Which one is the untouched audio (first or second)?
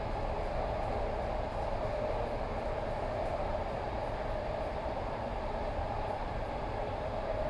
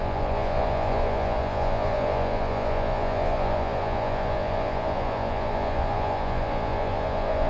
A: first